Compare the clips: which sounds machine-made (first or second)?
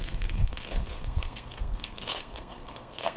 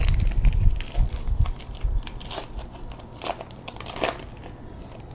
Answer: first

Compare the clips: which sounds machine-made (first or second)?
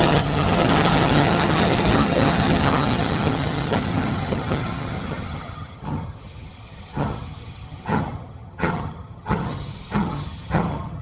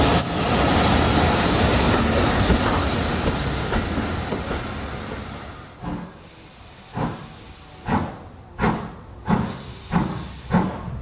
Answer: first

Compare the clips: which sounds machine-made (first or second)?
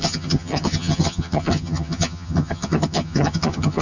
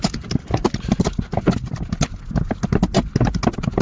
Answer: first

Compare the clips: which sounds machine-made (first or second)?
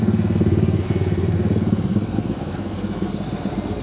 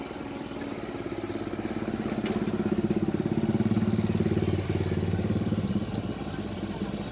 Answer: first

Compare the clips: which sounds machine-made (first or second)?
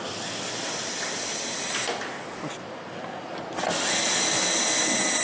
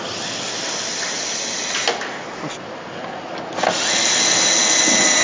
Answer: first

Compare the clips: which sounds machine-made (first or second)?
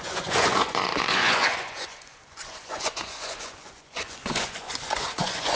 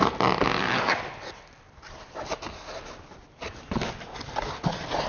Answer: first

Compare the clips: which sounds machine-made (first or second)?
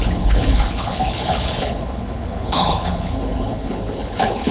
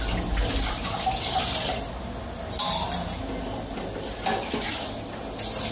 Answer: first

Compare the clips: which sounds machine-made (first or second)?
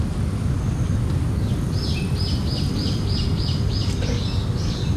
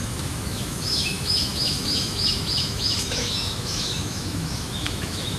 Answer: second